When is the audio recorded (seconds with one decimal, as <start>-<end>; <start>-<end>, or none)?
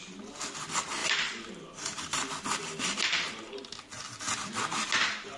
0.0-1.0; 4.0-5.4